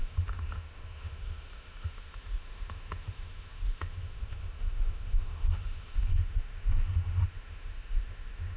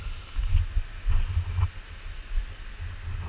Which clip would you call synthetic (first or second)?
first